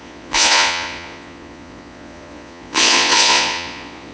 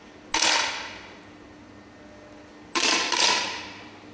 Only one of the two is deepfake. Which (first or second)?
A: first